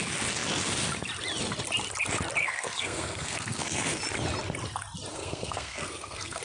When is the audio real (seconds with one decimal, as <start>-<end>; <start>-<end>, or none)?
0.0-2.4; 4.0-5.1